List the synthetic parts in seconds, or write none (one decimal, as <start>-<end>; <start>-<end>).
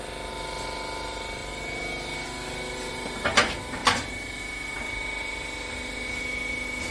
none